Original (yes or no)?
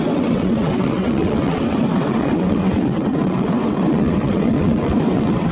no